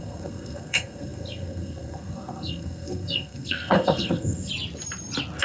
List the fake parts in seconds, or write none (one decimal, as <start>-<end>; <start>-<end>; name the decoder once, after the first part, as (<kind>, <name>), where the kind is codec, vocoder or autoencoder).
0.0-4.5 (codec, SNAC)